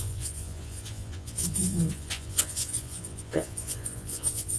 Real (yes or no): no